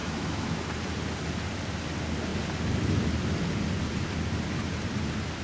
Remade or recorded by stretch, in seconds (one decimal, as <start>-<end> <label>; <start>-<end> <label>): 0.0-0.6 remade; 0.6-5.4 recorded